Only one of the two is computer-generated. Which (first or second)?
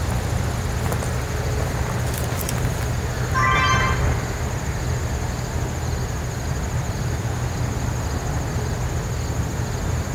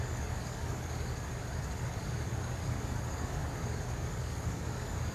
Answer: second